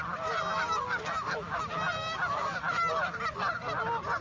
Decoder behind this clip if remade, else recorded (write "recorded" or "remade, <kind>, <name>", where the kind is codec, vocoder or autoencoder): recorded